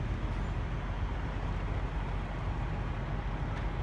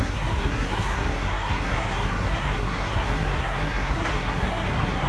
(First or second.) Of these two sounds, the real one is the first